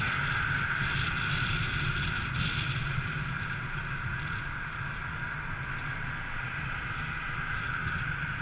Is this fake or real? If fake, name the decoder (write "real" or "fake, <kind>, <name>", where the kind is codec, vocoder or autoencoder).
real